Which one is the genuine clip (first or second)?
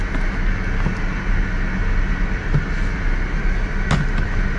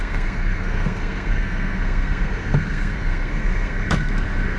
first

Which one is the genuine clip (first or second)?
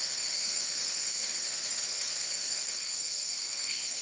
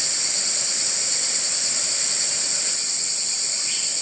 second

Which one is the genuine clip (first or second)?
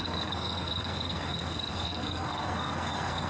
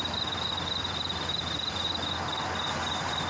second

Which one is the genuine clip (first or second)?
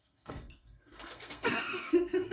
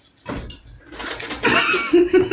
second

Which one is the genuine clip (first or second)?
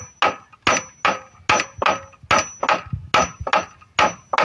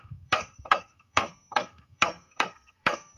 first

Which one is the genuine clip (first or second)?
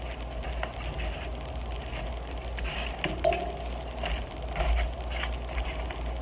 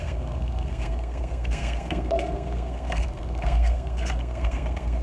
first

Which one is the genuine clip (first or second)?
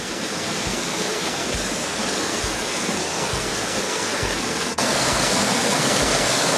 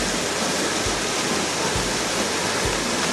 second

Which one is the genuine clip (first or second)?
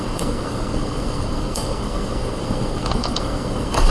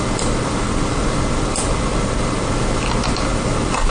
second